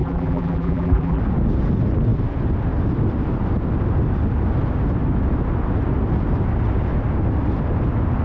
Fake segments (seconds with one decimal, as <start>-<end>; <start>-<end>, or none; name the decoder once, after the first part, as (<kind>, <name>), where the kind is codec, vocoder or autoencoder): 0.0-1.2 (vocoder, BigVGAN v2)